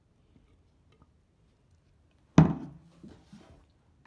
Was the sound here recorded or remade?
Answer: recorded